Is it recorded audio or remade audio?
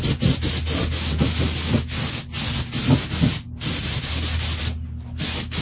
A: recorded